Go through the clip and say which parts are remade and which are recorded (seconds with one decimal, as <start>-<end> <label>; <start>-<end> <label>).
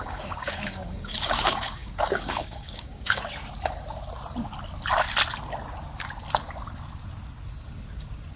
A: 0.0-3.4 remade; 3.4-8.4 recorded